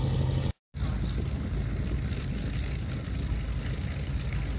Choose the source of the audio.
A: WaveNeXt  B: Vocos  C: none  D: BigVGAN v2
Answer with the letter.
C